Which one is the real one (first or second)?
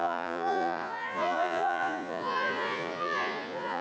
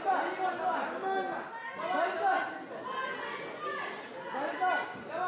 second